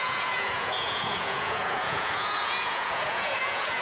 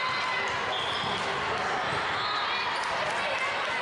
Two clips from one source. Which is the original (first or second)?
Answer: second